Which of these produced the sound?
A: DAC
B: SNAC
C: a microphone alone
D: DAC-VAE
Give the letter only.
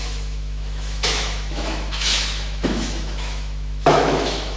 D